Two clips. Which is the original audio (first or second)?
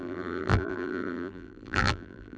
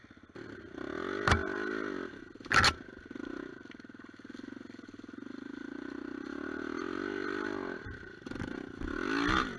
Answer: second